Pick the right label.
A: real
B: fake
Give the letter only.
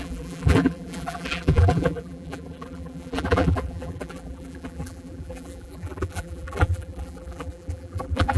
B